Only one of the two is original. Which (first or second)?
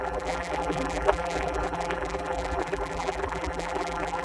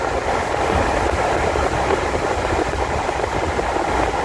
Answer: second